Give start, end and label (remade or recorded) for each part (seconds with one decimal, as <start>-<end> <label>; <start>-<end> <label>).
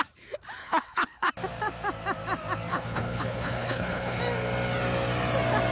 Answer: 0.0-0.6 recorded; 0.6-1.3 remade; 1.3-2.7 recorded; 2.7-4.2 remade; 4.2-5.7 recorded